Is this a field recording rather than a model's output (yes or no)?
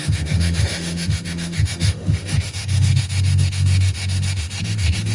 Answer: no